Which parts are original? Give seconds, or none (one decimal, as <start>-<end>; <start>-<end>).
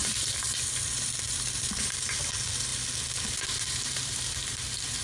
none